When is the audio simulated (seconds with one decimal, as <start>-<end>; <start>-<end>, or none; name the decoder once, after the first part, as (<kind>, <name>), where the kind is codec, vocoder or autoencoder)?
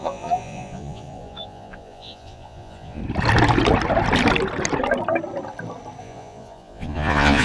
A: 0.0-3.0 (vocoder, Vocos); 6.0-7.4